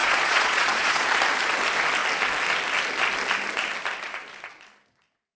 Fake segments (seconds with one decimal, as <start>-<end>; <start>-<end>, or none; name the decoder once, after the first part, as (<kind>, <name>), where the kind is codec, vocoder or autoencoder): 0.0-1.2 (vocoder, Vocos)